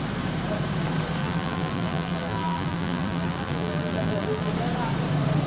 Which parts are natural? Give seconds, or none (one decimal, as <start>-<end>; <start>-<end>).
0.0-1.2; 4.5-5.5